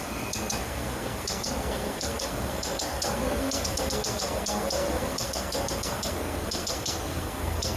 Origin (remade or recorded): remade